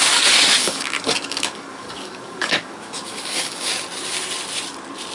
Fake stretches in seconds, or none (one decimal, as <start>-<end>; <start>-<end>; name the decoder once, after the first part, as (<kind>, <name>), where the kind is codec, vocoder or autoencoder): 0.6-3.7 (codec, DAC)